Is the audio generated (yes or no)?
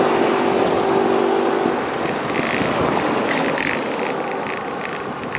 no